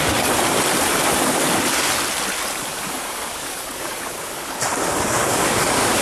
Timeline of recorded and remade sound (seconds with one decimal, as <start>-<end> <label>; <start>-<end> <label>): 0.0-2.7 recorded; 2.7-4.6 remade; 4.6-5.2 recorded; 5.2-6.0 remade

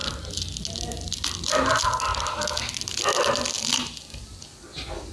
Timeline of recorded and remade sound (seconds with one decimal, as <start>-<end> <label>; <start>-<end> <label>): 0.0-5.1 recorded

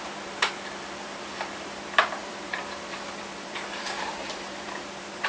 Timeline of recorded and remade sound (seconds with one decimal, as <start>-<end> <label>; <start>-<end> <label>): 0.0-5.3 remade

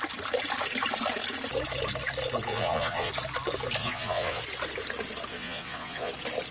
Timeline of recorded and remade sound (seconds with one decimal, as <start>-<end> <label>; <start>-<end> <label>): 0.0-2.5 recorded; 2.5-3.1 remade; 3.1-3.8 recorded; 3.8-4.4 remade; 4.4-5.3 recorded; 5.3-6.1 remade; 6.1-6.5 recorded

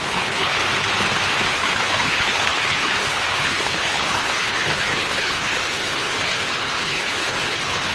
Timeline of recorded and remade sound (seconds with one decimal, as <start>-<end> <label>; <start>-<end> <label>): 0.0-0.6 remade; 0.6-1.5 recorded; 1.5-7.9 remade

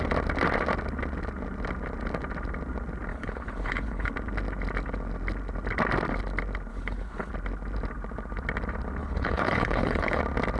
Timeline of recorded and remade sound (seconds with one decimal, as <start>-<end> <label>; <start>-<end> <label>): 0.0-3.1 recorded; 3.1-4.1 remade; 4.1-6.7 recorded; 6.7-7.3 remade; 7.3-9.0 recorded; 9.0-10.2 remade; 10.2-10.6 recorded

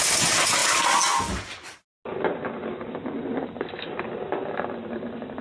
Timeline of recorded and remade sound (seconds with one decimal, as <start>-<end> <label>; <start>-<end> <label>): 0.0-5.4 recorded

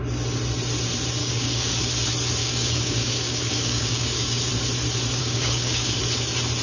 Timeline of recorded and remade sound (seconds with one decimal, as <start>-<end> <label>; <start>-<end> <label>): 0.0-1.2 recorded; 1.2-1.8 remade; 1.8-2.4 recorded; 2.4-4.5 remade; 4.5-5.2 recorded; 5.2-6.0 remade; 6.0-6.6 recorded